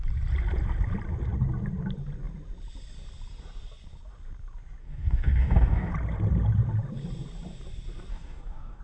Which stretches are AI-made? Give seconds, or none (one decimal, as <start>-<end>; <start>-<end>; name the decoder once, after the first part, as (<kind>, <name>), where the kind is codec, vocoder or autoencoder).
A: 4.8-5.9 (codec, DAC); 8.1-8.8